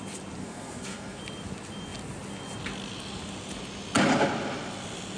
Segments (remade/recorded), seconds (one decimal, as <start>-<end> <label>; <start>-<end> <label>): 0.0-0.4 recorded; 0.4-1.2 remade; 1.2-5.2 recorded